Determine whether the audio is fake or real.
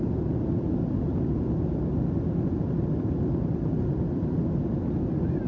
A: real